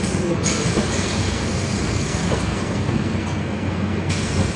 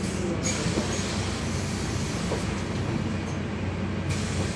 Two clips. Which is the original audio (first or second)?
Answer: second